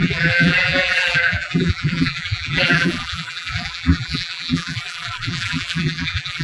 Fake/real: fake